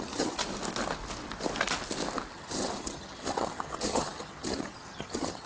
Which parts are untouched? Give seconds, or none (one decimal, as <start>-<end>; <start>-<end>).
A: 0.4-2.3